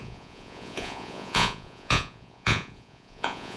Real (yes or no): no